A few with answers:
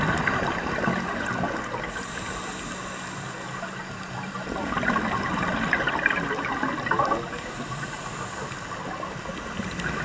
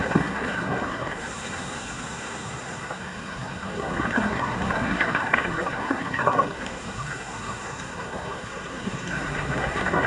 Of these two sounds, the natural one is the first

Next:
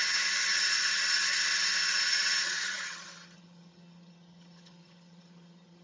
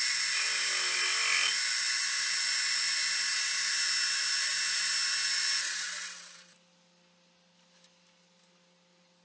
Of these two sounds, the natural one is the second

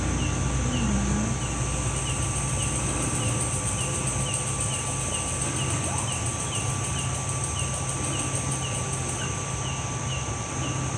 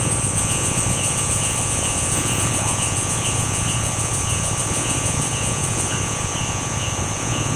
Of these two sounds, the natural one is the first